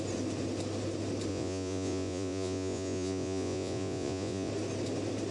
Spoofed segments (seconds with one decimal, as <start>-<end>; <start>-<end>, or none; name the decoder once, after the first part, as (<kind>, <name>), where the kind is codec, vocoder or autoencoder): 1.3-4.5 (vocoder, Vocos)